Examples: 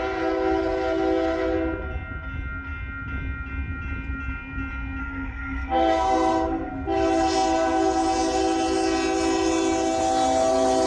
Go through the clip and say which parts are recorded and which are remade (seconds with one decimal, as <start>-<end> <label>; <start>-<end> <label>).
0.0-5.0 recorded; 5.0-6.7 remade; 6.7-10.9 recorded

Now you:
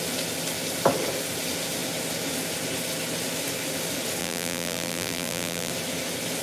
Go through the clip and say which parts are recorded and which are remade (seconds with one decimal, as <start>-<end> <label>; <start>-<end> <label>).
0.0-4.2 recorded; 4.2-5.7 remade; 5.7-6.4 recorded

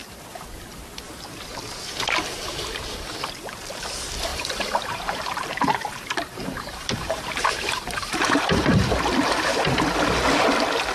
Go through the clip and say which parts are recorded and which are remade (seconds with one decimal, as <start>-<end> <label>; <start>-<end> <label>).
0.0-4.3 recorded; 4.3-9.5 remade; 9.5-10.9 recorded

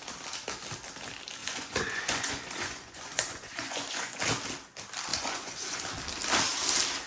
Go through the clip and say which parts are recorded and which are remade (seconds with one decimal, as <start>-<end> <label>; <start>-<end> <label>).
0.0-1.4 recorded; 1.4-4.2 remade; 4.2-5.1 recorded; 5.1-5.8 remade; 5.8-7.1 recorded